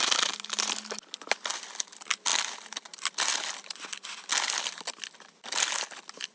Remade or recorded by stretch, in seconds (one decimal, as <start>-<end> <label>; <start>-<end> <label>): 0.0-6.3 recorded